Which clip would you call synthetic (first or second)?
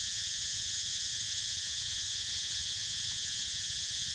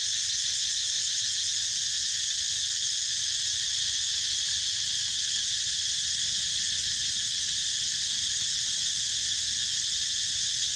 first